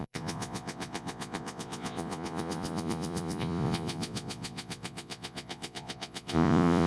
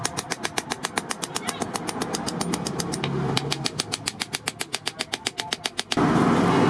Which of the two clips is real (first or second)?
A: second